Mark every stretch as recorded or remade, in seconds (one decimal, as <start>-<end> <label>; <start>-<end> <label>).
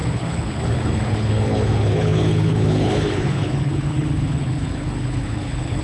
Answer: 0.0-5.8 remade